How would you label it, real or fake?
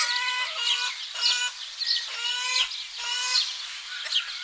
real